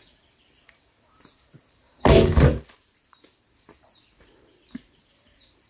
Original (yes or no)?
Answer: no